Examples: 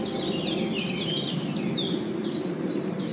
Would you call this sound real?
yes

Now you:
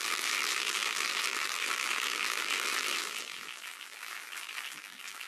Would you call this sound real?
no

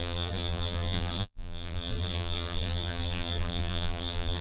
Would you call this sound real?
no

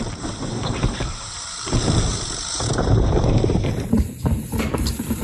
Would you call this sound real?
no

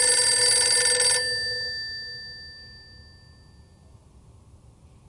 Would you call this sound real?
yes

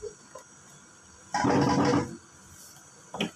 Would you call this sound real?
yes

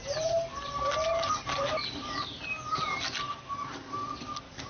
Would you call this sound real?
yes